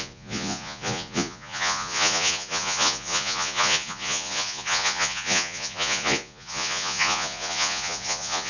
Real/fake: fake